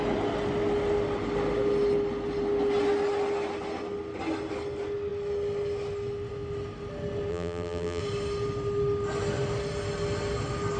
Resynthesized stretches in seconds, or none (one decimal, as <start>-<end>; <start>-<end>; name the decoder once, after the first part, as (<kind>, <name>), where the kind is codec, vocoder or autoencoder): 7.3-8.0 (vocoder, BigVGAN v2)